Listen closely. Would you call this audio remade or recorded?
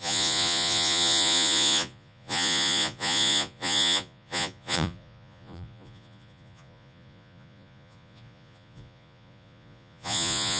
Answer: remade